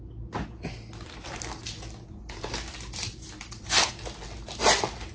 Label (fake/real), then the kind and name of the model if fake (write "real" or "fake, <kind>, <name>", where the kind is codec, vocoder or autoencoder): real